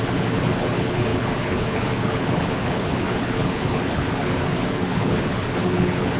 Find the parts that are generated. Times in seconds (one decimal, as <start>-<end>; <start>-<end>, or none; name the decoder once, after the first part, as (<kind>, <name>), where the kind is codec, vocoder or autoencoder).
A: 0.0-6.2 (codec, HILCodec)